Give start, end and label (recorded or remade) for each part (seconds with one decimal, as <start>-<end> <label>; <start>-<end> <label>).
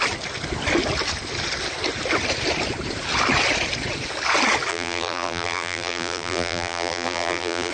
0.0-4.7 recorded; 4.7-7.7 remade